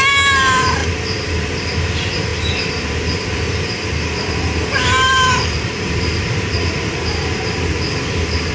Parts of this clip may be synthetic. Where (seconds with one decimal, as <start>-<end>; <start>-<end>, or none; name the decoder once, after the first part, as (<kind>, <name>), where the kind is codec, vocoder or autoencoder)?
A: 0.0-8.5 (vocoder, BigVGAN v2)